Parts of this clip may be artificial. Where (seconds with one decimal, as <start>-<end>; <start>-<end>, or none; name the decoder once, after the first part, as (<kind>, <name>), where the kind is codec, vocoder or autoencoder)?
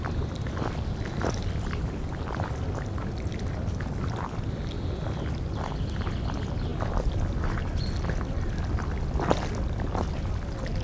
none